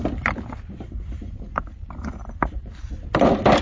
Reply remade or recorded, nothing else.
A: recorded